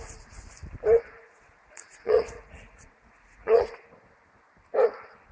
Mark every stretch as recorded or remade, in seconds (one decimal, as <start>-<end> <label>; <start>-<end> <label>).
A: 0.0-1.2 recorded; 1.2-3.7 remade; 3.7-5.3 recorded